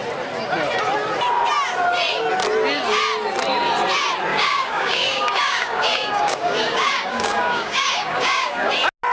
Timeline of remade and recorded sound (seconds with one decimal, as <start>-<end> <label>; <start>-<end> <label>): 0.0-4.3 recorded; 4.3-8.7 remade; 8.7-9.1 recorded